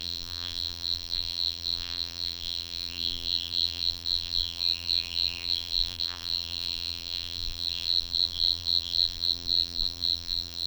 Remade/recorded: remade